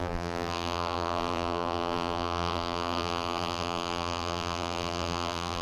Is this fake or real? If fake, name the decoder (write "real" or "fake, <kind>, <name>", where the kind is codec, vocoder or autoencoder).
fake, vocoder, BigVGAN v2